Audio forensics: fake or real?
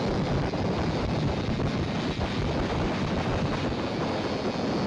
real